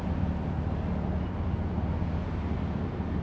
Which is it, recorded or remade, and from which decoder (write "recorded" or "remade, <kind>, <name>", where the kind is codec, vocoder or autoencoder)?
recorded